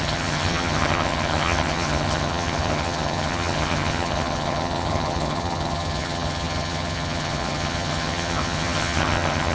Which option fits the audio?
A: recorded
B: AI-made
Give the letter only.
B